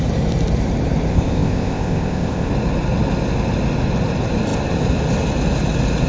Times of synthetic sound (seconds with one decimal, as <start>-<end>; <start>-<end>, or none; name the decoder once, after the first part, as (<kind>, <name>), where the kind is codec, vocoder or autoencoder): 1.1-2.5 (codec, ZipCodec)